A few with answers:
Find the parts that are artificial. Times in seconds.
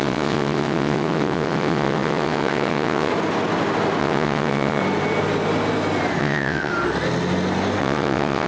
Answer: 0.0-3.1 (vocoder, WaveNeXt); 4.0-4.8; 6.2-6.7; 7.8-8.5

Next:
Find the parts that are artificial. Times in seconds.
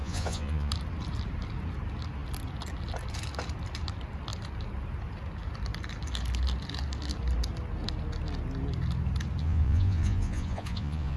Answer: 0.0-0.7 (vocoder, Vocos); 9.4-11.2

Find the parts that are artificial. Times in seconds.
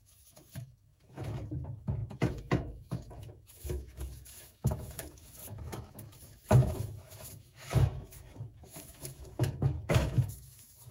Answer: 0.0-10.9 (autoencoder, DAC-VAE)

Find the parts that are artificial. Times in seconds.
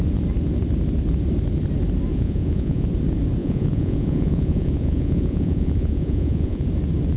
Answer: 2.1-2.9 (vocoder, Vocos); 3.4-6.7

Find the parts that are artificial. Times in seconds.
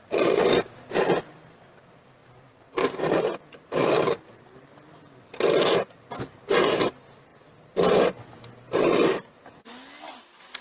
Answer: 2.2-3.2 (vocoder, BigVGAN v2)